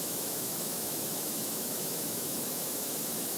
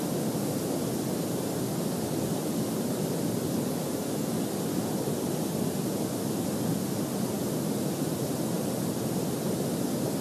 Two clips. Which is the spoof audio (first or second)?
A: first